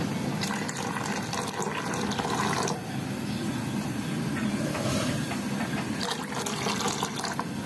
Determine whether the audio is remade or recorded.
recorded